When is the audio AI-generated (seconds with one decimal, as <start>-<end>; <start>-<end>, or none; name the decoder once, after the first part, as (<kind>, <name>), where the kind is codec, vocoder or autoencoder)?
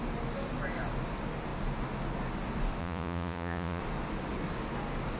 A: 2.8-3.8 (vocoder, Vocos)